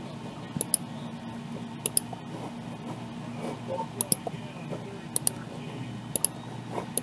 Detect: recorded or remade recorded